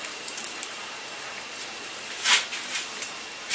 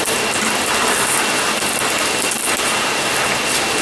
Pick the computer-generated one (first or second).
first